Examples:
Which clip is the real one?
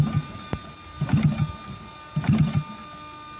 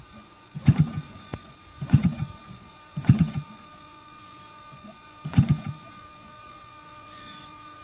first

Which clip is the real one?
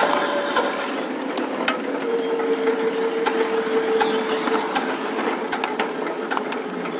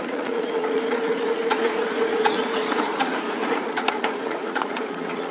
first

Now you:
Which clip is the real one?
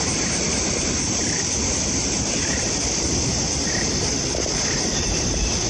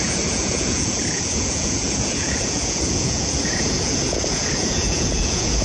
first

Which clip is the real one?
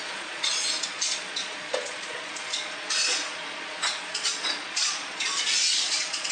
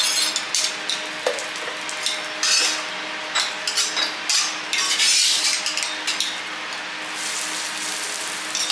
second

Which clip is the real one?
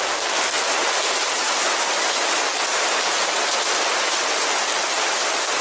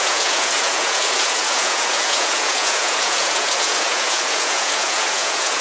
first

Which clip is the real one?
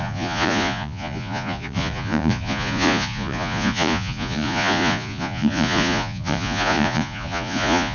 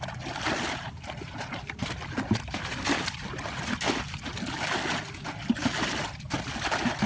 second